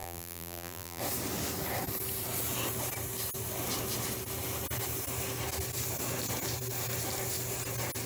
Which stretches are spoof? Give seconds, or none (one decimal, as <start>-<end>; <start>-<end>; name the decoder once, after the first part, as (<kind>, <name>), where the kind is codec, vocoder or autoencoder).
0.0-1.0 (vocoder, BigVGAN v2)